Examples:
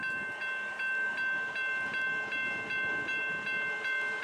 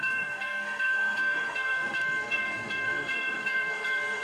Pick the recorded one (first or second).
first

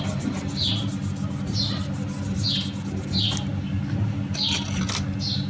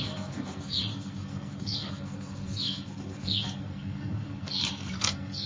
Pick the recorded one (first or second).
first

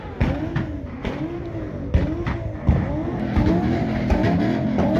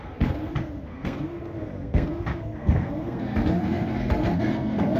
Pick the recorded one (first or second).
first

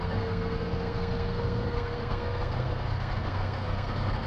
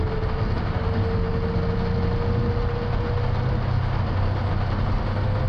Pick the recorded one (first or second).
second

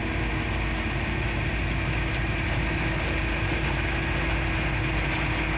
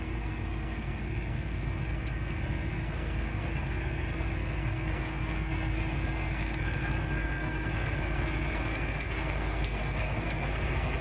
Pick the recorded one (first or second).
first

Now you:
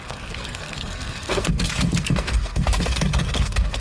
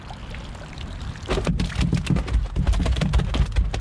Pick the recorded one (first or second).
second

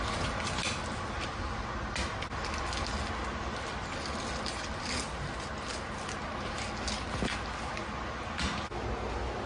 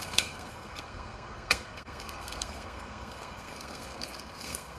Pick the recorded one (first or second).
first